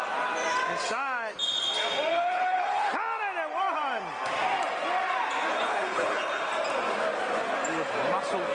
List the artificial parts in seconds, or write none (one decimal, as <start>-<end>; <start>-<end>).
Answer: 2.1-2.9; 5.5-6.5